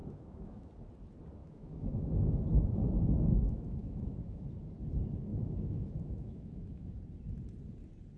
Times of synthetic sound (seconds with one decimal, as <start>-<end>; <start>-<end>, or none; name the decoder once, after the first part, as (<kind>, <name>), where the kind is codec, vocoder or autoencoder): 0.0-0.7 (autoencoder, DAC-VAE); 1.4-4.4; 5.3-6.9